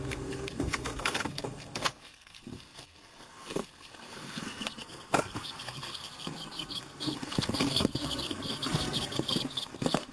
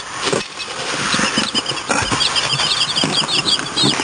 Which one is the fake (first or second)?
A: first